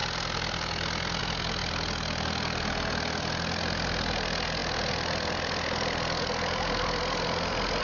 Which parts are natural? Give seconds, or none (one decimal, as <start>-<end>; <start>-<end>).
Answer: 0.0-7.8